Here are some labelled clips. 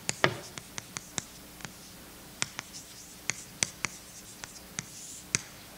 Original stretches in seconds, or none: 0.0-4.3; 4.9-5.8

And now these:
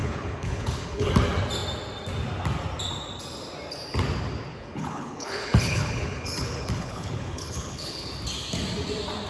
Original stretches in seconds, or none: 1.1-4.5; 8.1-9.3